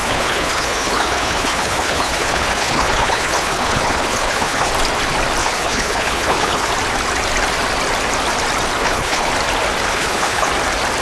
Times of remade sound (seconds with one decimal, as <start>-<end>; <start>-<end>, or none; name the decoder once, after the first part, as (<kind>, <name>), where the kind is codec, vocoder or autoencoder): 0.0-4.7 (codec, HILCodec); 5.4-6.7; 8.8-9.3; 9.9-10.5